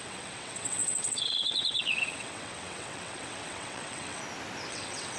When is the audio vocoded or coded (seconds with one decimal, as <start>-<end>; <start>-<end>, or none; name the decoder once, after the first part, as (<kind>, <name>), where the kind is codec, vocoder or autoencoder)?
0.0-4.2 (vocoder, WaveNeXt); 4.7-5.2